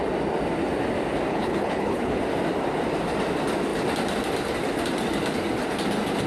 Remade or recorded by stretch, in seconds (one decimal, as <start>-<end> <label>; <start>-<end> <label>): 0.0-1.3 recorded; 1.3-2.2 remade; 2.2-6.3 recorded